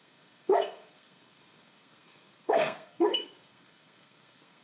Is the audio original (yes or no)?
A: no